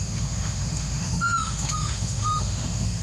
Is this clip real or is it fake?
fake